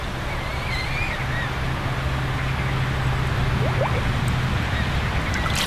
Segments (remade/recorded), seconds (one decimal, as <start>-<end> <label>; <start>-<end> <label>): 0.0-5.7 recorded